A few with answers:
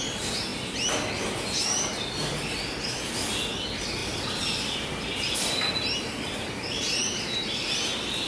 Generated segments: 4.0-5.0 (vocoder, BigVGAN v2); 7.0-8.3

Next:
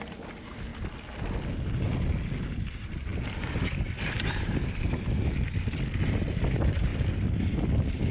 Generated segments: 0.0-0.7 (vocoder, BigVGAN v2); 2.5-8.1

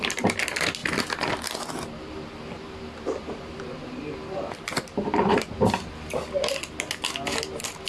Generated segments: 0.8-3.6 (vocoder, BigVGAN v2)

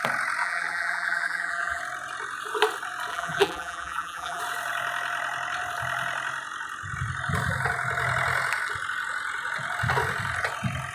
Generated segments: 0.4-1.8 (vocoder, BigVGAN v2); 3.1-4.4

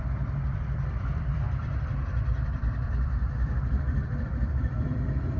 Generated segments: 0.0-5.4 (vocoder, BigVGAN v2)

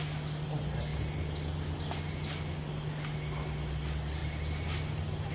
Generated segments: none

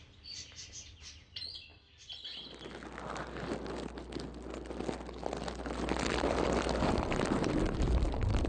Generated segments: 0.0-1.7 (vocoder, BigVGAN v2); 5.9-8.5

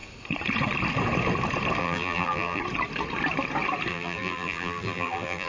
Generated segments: 1.8-2.6 (vocoder, BigVGAN v2); 3.9-5.5